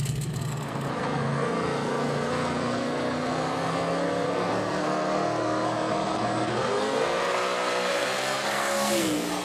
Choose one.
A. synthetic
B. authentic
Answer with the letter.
A